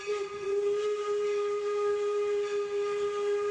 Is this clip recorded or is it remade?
recorded